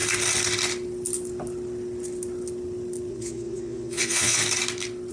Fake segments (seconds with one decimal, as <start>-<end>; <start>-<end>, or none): 3.1-4.4